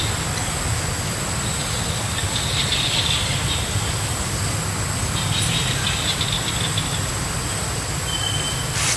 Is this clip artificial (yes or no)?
no